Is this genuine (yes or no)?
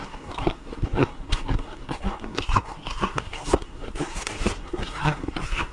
no